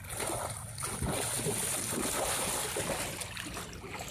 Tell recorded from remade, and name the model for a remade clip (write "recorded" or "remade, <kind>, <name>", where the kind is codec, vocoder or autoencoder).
recorded